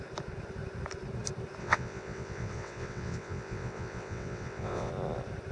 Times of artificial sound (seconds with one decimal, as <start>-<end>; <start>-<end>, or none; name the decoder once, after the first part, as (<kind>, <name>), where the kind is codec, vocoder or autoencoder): 1.6-4.9 (vocoder, WaveNeXt)